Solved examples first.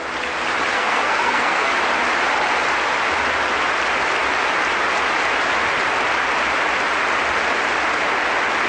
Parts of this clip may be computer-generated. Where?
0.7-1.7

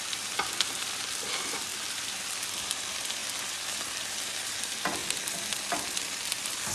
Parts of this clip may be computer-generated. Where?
0.0-5.0; 5.7-6.7

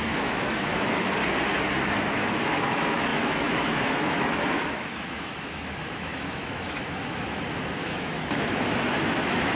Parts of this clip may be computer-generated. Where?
0.0-1.2; 1.9-9.6